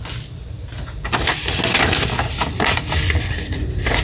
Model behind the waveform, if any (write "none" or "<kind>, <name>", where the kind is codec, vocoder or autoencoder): none